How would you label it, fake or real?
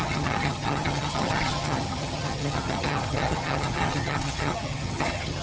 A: fake